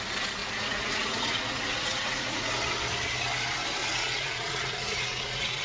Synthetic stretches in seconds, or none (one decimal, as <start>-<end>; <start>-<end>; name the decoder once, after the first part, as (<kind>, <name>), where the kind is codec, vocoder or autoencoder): 0.4-2.5 (vocoder, Vocos); 3.8-5.6